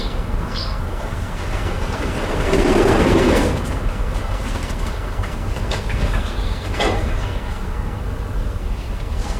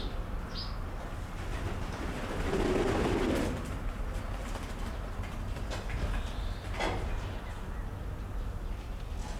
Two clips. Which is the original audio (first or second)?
second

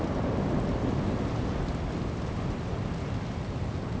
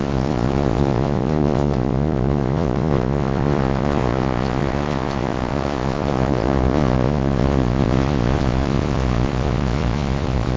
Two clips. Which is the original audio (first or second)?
first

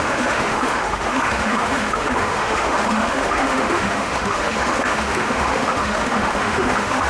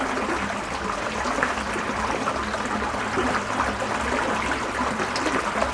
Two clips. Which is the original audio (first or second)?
second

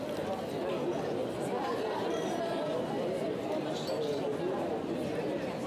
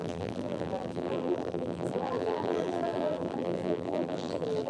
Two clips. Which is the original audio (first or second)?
first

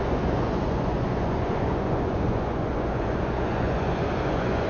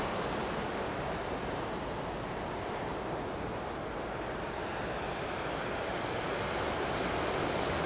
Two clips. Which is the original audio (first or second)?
second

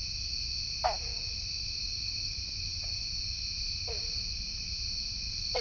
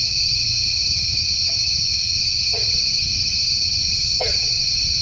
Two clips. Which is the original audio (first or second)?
first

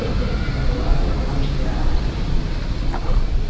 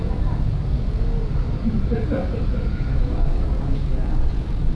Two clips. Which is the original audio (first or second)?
first